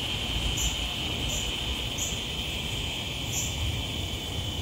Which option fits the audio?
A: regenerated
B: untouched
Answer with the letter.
B